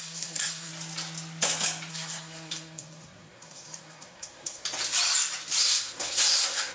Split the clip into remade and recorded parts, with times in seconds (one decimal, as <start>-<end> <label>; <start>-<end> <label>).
0.0-0.7 remade; 0.7-1.9 recorded; 1.9-4.6 remade; 4.6-5.6 recorded; 5.6-6.7 remade